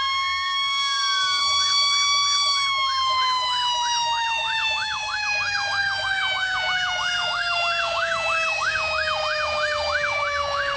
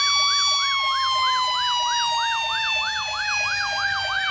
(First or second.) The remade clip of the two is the first